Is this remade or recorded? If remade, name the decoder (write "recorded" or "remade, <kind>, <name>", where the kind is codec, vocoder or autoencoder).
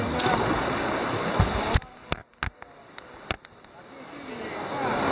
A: recorded